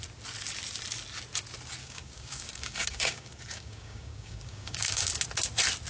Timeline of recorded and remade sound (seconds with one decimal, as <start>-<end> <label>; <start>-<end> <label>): 0.0-1.8 recorded; 1.8-5.1 remade; 5.1-5.9 recorded